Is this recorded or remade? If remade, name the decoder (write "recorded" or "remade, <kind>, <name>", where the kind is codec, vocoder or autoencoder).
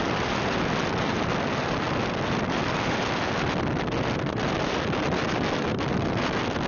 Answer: recorded